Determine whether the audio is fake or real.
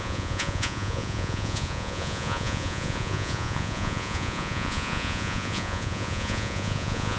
fake